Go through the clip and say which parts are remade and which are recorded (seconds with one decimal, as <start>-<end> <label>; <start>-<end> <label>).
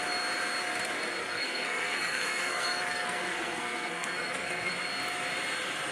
0.0-1.2 recorded; 1.2-4.7 remade; 4.7-5.9 recorded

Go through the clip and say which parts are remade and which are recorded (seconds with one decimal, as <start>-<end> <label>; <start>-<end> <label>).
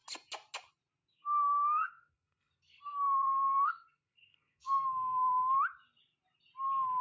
0.0-1.1 recorded; 1.1-5.3 remade; 5.3-7.0 recorded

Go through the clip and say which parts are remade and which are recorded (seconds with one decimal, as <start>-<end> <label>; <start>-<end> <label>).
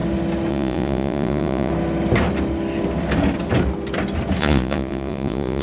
0.0-0.5 recorded; 0.5-1.7 remade; 1.7-4.4 recorded; 4.4-5.6 remade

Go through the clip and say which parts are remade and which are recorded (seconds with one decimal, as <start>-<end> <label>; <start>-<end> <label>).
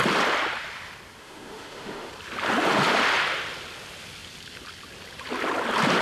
0.0-1.2 recorded; 1.2-2.1 remade; 2.1-6.0 recorded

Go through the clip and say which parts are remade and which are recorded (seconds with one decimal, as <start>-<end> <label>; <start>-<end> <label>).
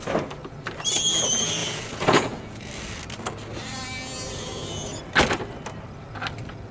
0.0-1.6 recorded; 1.6-2.7 remade; 2.7-6.7 recorded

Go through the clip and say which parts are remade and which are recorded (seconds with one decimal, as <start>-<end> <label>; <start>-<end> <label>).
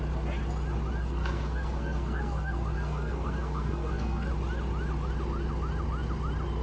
0.0-1.0 recorded; 1.0-4.3 remade; 4.3-6.6 recorded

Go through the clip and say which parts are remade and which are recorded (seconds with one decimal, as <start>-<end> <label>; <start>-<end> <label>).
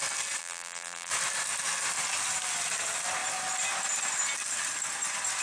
0.0-0.4 recorded; 0.4-1.1 remade; 1.1-5.4 recorded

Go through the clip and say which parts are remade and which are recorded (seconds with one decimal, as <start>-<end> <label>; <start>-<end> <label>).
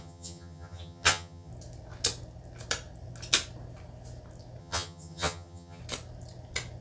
0.0-1.5 remade; 1.5-4.6 recorded; 4.6-5.8 remade; 5.8-6.8 recorded